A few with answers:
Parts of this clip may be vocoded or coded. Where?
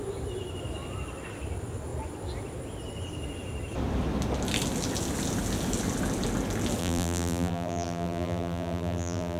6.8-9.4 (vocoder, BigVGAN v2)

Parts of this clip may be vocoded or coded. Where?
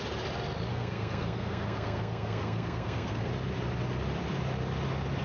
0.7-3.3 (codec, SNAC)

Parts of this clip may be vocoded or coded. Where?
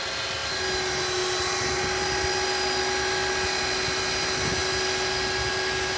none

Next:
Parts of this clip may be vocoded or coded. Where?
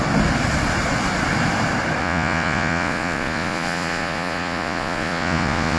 2.0-5.8 (vocoder, Vocos)